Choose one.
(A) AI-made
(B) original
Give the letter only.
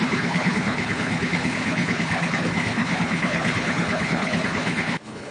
A